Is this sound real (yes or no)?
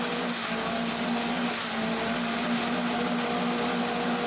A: yes